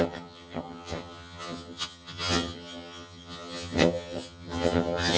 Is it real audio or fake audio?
fake